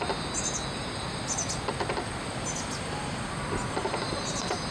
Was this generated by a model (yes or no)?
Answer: no